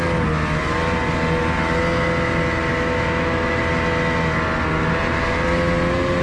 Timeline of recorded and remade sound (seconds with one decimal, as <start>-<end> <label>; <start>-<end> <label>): 0.0-2.7 recorded; 2.7-3.6 remade; 3.6-6.2 recorded